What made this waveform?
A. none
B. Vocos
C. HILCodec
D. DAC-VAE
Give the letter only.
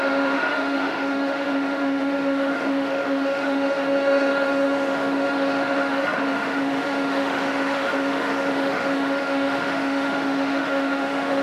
D